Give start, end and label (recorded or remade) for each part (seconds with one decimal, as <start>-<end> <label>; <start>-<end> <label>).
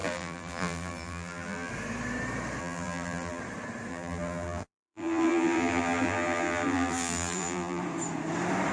0.0-1.7 remade; 1.7-2.6 recorded; 2.6-3.4 remade; 3.4-3.9 recorded; 3.9-7.8 remade; 7.8-8.7 recorded